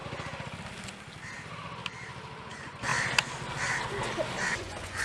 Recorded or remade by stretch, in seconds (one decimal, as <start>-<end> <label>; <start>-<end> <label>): 0.0-2.5 recorded; 2.5-2.9 remade; 2.9-4.6 recorded; 4.6-5.0 remade